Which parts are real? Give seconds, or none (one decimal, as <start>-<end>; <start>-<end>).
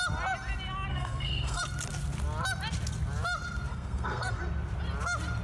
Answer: 0.0-0.9; 1.6-3.7; 4.4-5.4